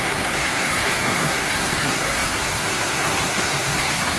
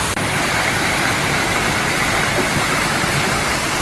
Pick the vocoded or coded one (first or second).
first